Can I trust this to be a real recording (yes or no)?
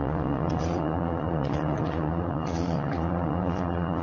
no